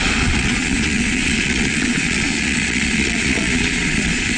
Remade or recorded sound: remade